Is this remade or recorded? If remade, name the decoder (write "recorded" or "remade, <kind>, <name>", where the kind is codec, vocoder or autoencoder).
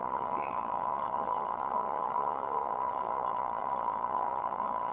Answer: remade, vocoder, Vocos